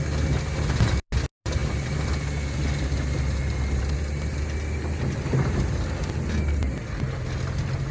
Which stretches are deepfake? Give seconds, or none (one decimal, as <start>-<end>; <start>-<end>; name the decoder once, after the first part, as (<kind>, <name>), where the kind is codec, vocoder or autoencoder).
none